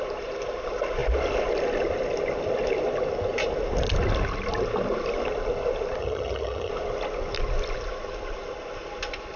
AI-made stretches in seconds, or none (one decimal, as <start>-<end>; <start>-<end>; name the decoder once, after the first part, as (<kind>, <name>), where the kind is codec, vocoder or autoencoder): 6.0-6.7 (vocoder, HiFi-GAN)